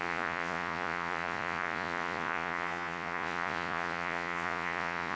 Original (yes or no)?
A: no